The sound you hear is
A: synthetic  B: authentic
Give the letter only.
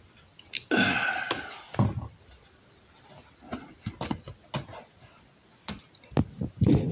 B